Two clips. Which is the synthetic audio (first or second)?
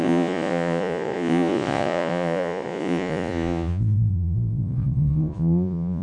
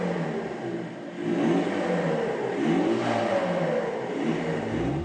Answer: first